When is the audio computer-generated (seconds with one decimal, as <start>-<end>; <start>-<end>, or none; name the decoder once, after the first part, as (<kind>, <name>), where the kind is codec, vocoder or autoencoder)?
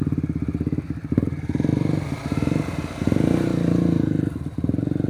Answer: 1.7-3.0 (vocoder, BigVGAN v2)